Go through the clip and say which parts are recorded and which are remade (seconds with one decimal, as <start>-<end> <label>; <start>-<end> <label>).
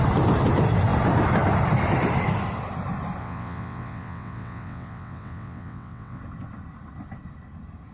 0.0-3.2 recorded; 3.2-6.2 remade; 6.2-7.9 recorded